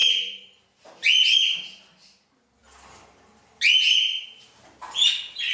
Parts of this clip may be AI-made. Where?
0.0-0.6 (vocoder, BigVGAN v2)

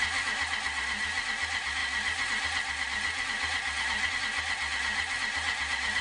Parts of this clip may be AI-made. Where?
none

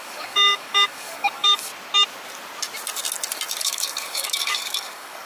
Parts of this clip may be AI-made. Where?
0.0-1.7 (codec, DAC); 3.6-5.3

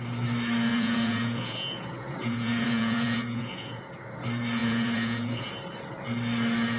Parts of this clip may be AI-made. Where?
0.7-3.8 (vocoder, Vocos); 4.6-5.5

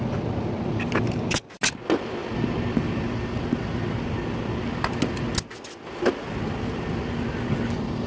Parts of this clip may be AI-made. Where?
none

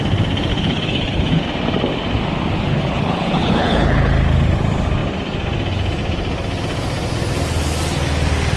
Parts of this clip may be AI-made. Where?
0.5-1.4 (codec, HILCodec); 2.7-4.1